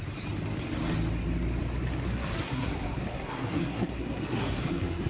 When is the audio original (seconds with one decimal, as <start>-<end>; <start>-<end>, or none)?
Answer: 0.0-2.1